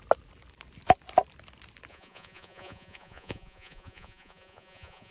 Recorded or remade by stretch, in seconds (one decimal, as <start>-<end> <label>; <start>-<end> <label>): 0.0-1.9 recorded; 1.9-5.1 remade